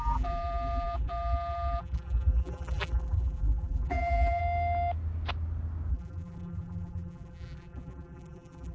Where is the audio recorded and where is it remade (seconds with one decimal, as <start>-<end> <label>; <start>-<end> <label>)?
0.0-4.4 remade; 4.4-5.9 recorded; 5.9-8.7 remade